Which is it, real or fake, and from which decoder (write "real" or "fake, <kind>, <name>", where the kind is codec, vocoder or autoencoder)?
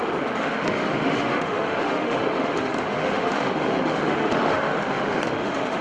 fake, autoencoder, DAC-VAE